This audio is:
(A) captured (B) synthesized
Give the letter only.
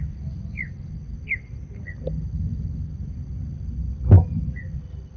A